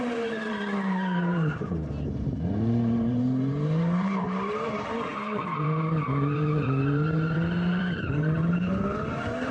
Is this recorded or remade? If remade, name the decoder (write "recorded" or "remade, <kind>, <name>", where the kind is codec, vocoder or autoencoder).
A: remade, vocoder, BigVGAN v2